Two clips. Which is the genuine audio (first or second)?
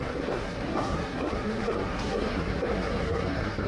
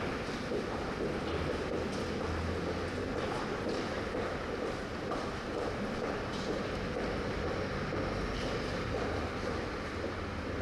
second